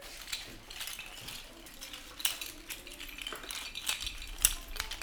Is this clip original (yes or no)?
yes